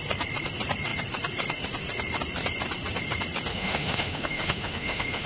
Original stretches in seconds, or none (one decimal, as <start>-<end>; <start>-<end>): 0.0-3.5